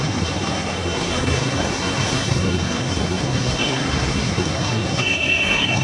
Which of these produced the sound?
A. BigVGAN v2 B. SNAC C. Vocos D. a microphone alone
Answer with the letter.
B